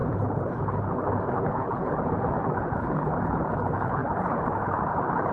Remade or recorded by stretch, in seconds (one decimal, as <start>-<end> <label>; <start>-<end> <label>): 0.0-5.3 remade